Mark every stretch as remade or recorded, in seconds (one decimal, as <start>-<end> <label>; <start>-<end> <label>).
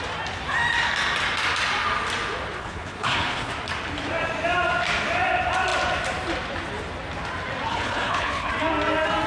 0.0-2.6 recorded; 2.6-3.5 remade; 3.5-7.7 recorded; 7.7-8.5 remade; 8.5-9.3 recorded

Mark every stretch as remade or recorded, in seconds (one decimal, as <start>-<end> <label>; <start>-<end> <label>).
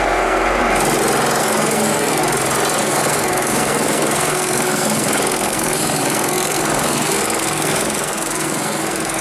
0.0-0.6 remade; 0.6-1.4 recorded; 1.4-2.2 remade; 2.2-2.8 recorded; 2.8-9.2 remade